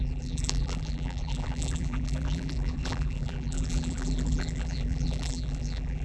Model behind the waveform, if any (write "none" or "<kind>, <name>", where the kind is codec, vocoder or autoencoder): vocoder, BigVGAN v2